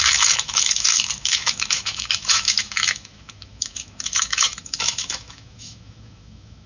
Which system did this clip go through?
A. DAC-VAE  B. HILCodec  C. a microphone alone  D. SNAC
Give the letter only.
A